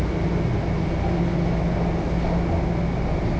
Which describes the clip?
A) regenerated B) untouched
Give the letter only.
B